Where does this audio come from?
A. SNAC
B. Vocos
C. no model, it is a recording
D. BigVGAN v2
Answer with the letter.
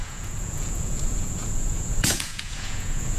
B